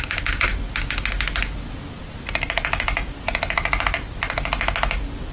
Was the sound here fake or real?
real